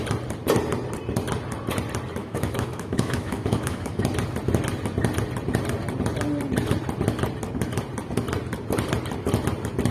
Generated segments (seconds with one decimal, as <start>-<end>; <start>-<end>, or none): 2.2-4.0